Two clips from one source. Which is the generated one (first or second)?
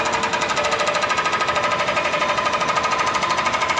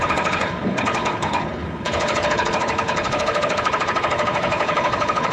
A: second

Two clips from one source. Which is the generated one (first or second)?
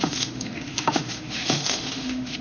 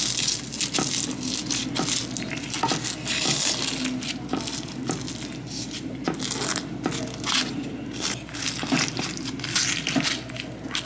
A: first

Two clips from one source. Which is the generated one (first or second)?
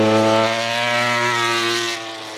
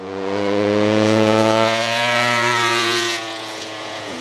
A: second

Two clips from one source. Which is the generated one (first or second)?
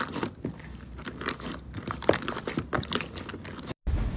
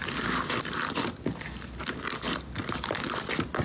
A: first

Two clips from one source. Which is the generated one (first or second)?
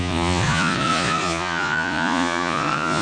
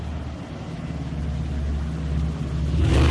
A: first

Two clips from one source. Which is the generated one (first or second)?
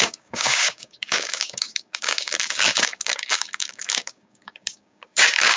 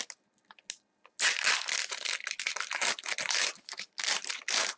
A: first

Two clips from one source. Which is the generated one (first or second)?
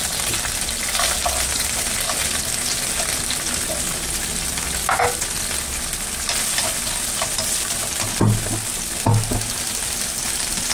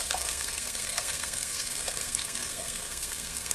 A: second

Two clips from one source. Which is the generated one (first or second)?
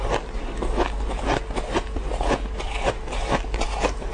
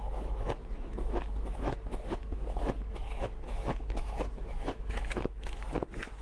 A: second